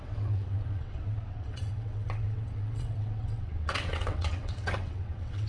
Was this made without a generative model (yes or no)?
no